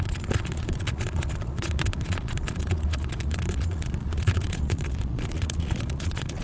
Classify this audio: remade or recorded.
remade